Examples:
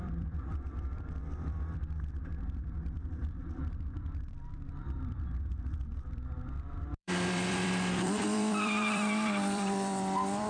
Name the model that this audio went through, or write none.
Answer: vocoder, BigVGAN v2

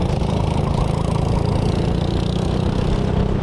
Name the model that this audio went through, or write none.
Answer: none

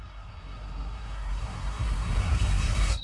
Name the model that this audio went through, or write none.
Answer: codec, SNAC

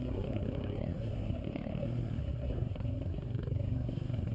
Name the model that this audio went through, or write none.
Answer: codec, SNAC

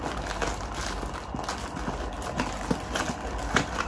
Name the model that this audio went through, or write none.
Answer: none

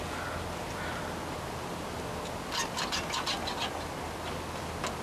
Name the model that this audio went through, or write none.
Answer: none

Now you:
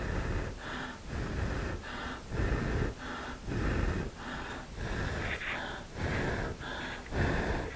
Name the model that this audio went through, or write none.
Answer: none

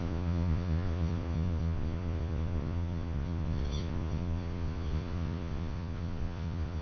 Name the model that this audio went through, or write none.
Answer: vocoder, Vocos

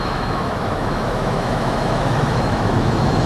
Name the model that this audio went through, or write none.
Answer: autoencoder, DAC-VAE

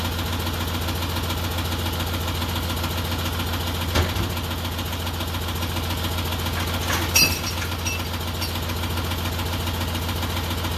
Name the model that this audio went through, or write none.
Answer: none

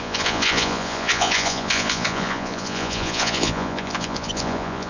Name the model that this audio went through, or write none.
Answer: vocoder, Vocos